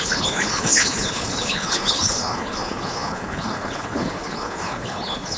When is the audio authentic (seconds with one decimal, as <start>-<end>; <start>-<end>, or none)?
none